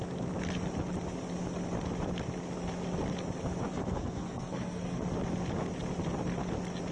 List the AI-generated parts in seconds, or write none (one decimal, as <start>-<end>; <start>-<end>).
3.7-5.0